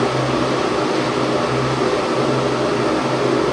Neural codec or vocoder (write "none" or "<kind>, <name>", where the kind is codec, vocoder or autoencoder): none